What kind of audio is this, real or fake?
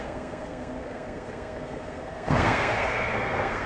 fake